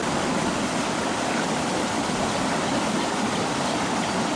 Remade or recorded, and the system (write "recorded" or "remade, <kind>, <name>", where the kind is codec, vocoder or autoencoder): recorded